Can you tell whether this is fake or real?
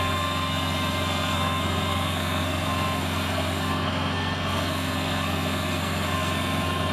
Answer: fake